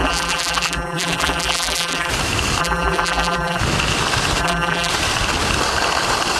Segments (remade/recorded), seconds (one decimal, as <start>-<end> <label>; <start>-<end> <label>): 0.0-2.1 remade; 2.1-2.6 recorded; 2.6-3.6 remade; 3.6-4.4 recorded; 4.4-4.9 remade; 4.9-6.4 recorded